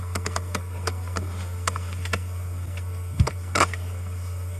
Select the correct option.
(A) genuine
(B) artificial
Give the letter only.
B